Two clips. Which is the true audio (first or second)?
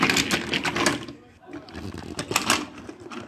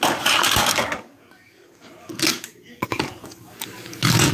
first